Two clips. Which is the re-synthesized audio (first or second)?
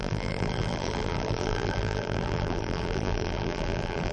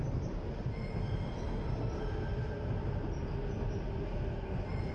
first